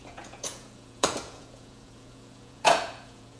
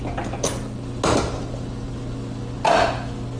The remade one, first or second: first